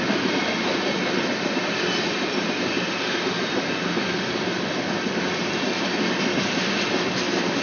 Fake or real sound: real